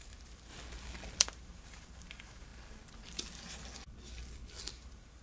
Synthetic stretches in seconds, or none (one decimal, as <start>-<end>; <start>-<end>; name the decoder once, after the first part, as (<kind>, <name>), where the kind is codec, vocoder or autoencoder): 0.0-0.5 (vocoder, BigVGAN v2); 1.2-2.5; 4.7-5.2